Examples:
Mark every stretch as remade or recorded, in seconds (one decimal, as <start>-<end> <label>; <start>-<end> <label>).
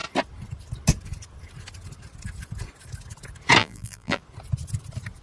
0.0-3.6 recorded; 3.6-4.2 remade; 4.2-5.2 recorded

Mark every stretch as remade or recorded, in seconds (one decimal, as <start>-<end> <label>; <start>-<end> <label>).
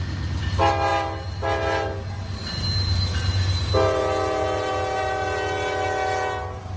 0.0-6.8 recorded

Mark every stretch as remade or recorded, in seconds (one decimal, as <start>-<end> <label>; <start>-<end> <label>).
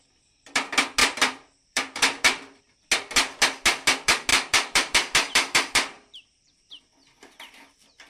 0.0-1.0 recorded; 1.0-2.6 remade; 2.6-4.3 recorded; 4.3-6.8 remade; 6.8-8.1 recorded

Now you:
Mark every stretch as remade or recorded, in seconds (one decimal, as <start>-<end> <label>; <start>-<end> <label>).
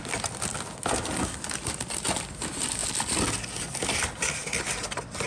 0.0-5.3 recorded